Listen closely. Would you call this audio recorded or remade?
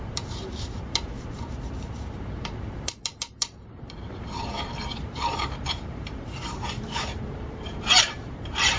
remade